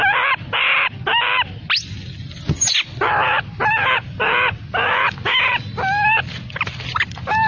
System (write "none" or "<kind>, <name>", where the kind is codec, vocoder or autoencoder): none